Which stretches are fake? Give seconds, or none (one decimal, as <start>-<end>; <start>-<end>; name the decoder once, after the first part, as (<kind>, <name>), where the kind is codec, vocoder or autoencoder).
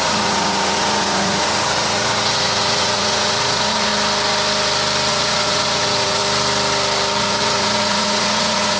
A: 0.0-3.9 (vocoder, Vocos); 5.1-6.2; 7.2-8.8